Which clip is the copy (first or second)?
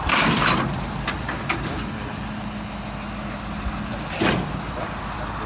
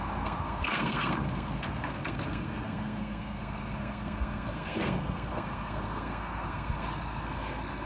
second